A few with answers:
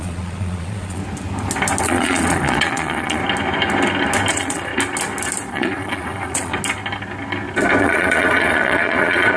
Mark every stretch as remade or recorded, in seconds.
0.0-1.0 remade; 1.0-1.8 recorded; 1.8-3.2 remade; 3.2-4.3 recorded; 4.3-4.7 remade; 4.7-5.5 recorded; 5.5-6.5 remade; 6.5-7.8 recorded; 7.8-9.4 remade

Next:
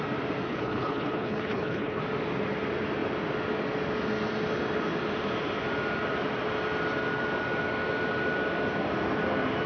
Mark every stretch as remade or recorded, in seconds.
0.0-0.5 recorded; 0.5-2.0 remade; 2.0-9.7 recorded

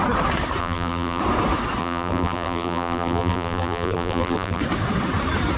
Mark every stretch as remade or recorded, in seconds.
0.0-0.6 recorded; 0.6-1.2 remade; 1.2-1.8 recorded; 1.8-4.6 remade; 4.6-5.6 recorded

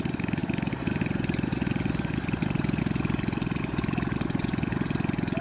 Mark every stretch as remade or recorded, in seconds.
0.0-5.4 recorded